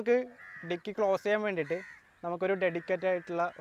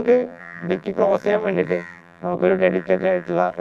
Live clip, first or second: first